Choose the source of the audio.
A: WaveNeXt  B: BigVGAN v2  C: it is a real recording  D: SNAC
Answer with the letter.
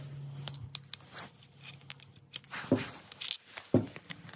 C